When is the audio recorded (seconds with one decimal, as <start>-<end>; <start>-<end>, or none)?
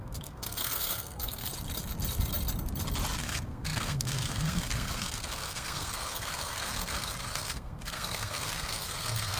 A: 1.5-3.2